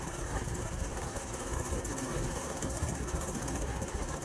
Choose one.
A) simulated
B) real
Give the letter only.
A